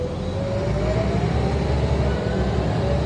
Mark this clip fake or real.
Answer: real